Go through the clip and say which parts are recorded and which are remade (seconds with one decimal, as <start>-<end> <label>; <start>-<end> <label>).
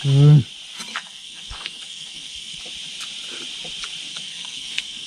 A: 0.0-0.9 recorded; 0.9-2.6 remade; 2.6-4.1 recorded; 4.1-5.1 remade